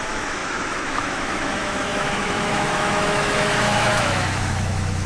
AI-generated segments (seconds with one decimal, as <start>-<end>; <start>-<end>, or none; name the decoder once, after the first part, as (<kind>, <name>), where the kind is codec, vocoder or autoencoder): 0.0-5.1 (autoencoder, DAC-VAE)